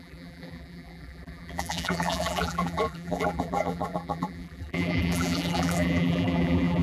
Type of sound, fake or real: fake